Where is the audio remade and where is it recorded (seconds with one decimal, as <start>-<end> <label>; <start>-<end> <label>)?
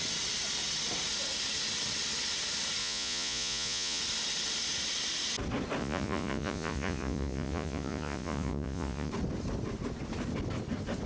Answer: 0.0-2.8 recorded; 2.8-4.0 remade; 4.0-5.8 recorded; 5.8-9.1 remade; 9.1-11.1 recorded